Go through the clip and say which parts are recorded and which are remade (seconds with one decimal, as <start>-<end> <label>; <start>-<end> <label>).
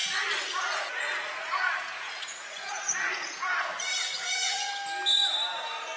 0.0-3.5 remade; 3.5-3.9 recorded; 3.9-4.7 remade; 4.7-6.0 recorded